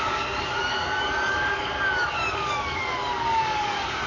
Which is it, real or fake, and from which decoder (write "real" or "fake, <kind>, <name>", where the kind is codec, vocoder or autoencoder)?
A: fake, codec, DAC